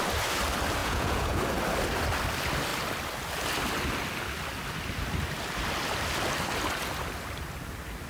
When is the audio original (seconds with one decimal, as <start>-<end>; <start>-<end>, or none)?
0.0-0.8; 1.4-8.1